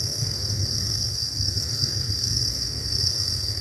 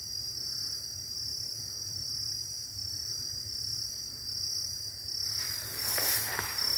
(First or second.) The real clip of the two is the second